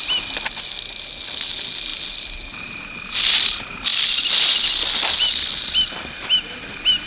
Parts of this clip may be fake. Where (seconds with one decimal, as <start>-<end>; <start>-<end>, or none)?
3.9-7.1

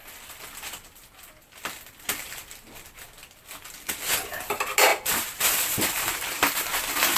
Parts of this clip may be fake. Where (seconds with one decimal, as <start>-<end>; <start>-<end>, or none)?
4.9-6.6